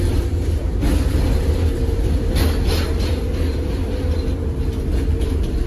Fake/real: real